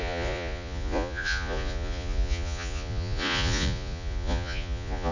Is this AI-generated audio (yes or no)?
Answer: yes